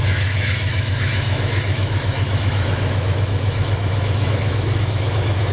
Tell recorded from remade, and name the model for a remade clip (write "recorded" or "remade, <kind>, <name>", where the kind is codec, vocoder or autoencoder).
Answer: remade, autoencoder, DAC-VAE